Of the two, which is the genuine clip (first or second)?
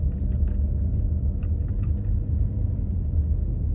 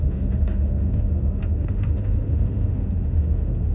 first